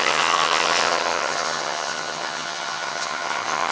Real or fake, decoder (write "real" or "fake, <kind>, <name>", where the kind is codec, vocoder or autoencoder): fake, vocoder, HiFi-GAN